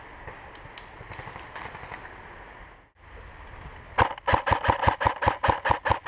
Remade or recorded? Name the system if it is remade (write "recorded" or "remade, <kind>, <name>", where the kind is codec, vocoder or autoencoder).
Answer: recorded